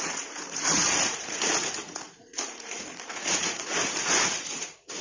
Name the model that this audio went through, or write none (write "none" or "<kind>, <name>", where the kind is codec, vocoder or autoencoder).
vocoder, Vocos